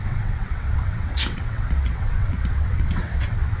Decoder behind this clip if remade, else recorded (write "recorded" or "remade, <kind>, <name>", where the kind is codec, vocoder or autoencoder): remade, vocoder, WaveNeXt